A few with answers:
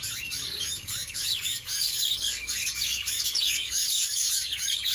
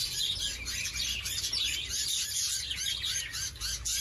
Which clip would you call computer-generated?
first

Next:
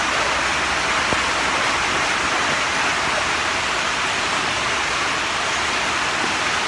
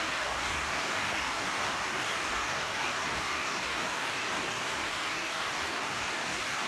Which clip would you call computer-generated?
second